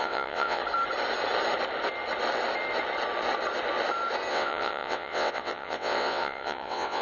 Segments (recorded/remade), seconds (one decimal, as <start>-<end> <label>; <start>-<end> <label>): 0.0-0.6 remade; 0.6-4.3 recorded; 4.3-7.0 remade